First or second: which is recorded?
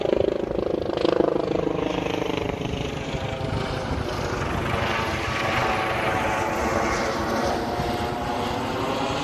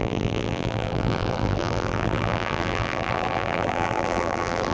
first